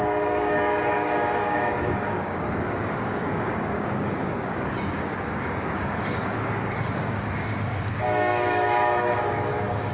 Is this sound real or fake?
fake